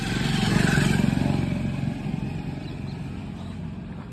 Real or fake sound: real